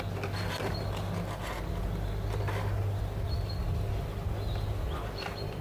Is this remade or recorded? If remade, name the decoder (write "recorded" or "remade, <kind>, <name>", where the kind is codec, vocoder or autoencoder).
recorded